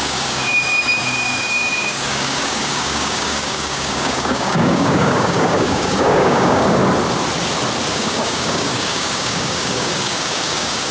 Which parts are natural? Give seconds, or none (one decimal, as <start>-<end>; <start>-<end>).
6.8-7.9

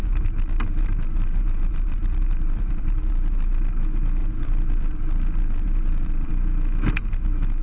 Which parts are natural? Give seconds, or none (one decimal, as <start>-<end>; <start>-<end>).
3.8-4.2; 6.3-7.6

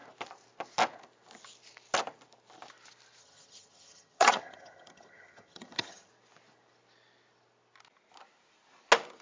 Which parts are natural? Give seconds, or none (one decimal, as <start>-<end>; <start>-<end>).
0.0-3.2; 6.1-9.2

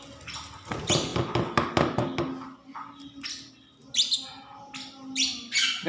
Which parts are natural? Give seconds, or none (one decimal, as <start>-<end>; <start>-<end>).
0.0-5.9

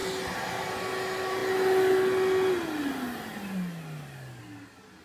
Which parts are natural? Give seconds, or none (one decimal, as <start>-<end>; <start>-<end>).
0.0-5.0

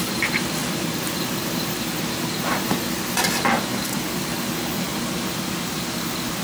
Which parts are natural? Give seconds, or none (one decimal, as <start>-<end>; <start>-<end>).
0.0-6.4

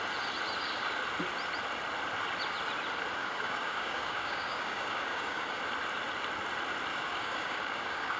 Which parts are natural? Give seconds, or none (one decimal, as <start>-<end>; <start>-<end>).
0.0-3.2; 5.6-6.9

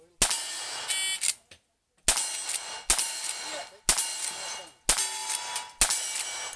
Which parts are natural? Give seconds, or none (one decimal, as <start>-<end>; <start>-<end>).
0.0-6.6